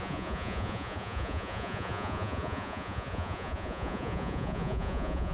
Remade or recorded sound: remade